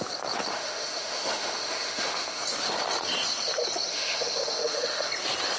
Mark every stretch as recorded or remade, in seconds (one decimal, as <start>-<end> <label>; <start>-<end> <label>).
0.0-0.5 recorded; 0.5-2.4 remade; 2.4-3.9 recorded; 3.9-5.1 remade; 5.1-5.6 recorded